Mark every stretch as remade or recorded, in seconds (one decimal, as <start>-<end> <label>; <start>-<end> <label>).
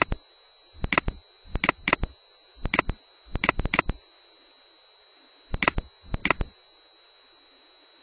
0.0-8.0 recorded